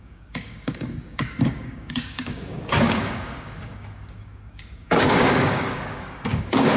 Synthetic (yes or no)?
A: yes